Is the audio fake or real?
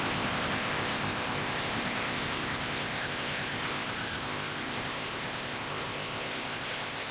fake